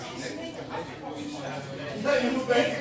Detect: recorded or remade remade